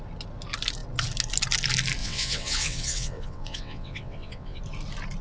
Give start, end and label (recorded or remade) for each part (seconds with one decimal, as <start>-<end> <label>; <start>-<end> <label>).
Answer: 0.0-2.0 recorded; 2.0-4.6 remade; 4.6-5.2 recorded